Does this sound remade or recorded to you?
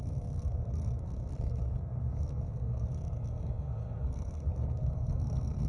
remade